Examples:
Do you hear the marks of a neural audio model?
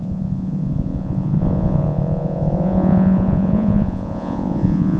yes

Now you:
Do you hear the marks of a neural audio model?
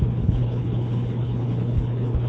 yes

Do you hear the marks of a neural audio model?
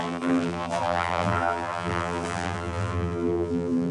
yes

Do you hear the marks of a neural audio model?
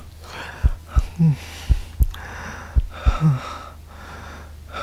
no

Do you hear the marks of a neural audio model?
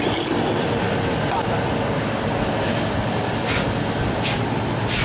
no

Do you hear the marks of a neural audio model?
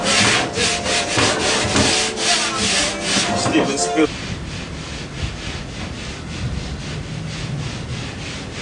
no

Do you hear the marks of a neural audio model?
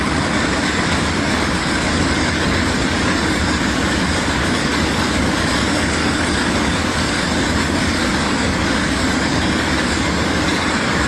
yes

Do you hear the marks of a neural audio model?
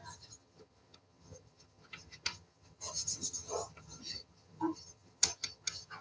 yes